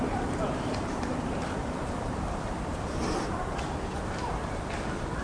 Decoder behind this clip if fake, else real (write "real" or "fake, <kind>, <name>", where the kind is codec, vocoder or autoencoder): fake, vocoder, BigVGAN v2